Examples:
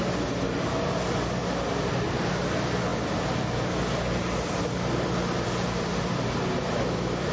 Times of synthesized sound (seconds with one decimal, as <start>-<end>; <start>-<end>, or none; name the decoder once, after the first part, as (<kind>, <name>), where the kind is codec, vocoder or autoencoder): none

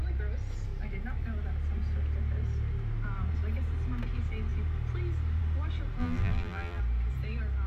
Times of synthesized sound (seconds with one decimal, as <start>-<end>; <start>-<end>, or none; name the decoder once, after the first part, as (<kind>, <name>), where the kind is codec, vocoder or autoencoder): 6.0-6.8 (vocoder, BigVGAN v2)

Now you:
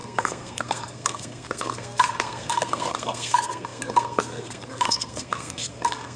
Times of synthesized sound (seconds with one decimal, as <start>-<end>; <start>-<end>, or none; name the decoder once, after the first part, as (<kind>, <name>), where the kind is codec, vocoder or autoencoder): 0.0-6.2 (codec, SNAC)

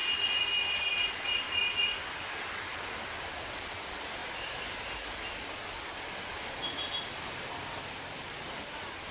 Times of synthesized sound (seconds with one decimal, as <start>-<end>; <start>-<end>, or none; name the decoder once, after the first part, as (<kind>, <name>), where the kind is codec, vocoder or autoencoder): none

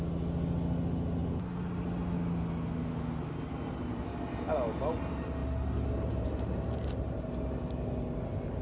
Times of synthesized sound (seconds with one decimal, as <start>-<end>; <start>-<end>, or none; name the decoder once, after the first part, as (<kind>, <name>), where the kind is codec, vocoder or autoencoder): none